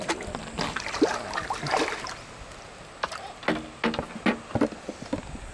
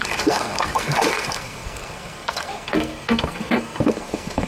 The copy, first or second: second